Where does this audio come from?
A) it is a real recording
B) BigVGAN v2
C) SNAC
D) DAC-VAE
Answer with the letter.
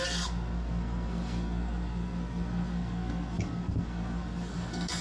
C